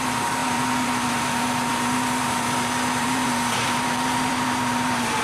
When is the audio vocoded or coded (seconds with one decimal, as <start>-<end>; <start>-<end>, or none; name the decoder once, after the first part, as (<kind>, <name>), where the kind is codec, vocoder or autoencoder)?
0.0-5.2 (vocoder, BigVGAN v2)